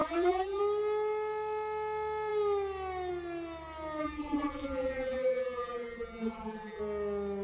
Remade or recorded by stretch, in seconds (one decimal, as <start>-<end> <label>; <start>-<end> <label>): 0.0-0.6 remade; 0.6-4.0 recorded; 4.0-6.8 remade; 6.8-7.4 recorded